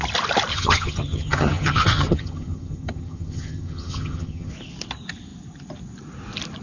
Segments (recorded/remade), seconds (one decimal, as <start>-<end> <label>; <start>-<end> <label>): 0.0-0.5 recorded; 0.5-4.5 remade; 4.5-6.6 recorded